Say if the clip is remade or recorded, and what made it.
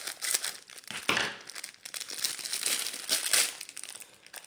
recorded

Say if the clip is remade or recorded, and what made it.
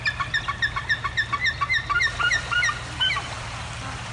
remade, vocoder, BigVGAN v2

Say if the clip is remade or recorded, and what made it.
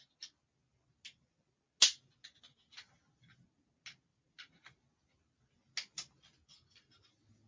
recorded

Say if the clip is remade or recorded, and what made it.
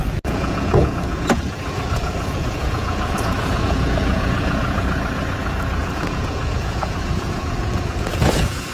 remade, vocoder, Vocos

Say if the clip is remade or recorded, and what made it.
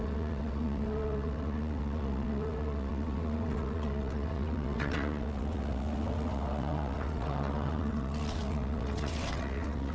remade, vocoder, WaveNeXt